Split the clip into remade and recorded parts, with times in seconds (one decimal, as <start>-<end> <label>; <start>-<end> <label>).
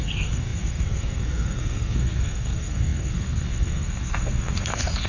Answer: 0.0-5.1 remade